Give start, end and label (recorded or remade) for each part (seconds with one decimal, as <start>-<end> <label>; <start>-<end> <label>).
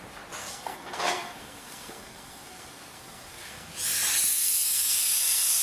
0.0-0.4 recorded; 0.4-3.7 remade; 3.7-4.3 recorded; 4.3-5.6 remade